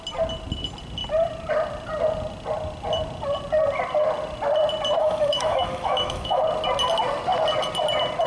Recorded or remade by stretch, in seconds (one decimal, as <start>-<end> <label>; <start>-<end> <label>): 0.0-5.0 recorded; 5.0-6.4 remade; 6.4-8.3 recorded